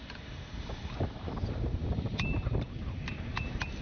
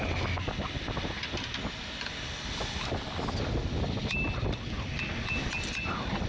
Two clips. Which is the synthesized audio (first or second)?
first